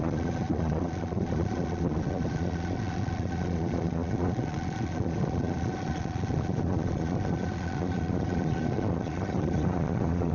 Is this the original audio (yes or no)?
no